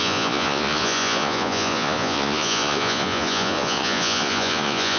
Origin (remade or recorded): remade